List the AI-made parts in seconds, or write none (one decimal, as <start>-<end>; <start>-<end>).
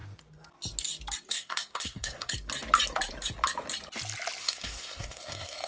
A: 1.3-2.3; 4.4-5.7